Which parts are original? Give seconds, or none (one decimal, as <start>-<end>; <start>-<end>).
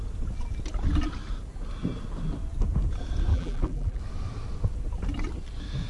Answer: 0.0-3.3; 4.0-5.9